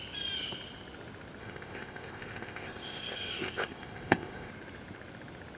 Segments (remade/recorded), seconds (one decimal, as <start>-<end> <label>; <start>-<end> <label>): 0.0-1.4 recorded; 1.4-4.5 remade; 4.5-5.6 recorded